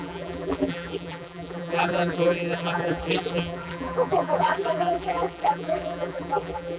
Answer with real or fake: fake